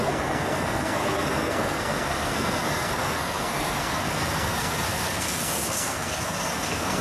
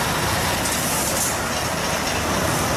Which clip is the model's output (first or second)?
first